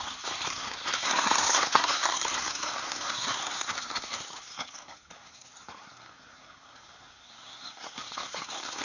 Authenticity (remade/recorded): remade